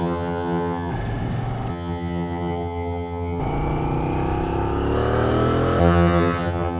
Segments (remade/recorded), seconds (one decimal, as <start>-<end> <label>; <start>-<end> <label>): 0.0-0.9 remade; 0.9-1.7 recorded; 1.7-3.4 remade; 3.4-5.8 recorded; 5.8-6.8 remade